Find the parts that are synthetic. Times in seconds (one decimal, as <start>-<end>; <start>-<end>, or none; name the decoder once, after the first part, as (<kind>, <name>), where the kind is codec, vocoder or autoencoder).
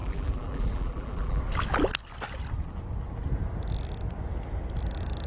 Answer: 0.0-1.4 (vocoder, BigVGAN v2)